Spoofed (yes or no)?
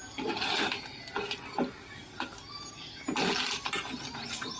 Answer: no